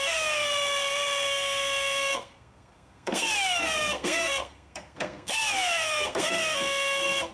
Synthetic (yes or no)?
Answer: yes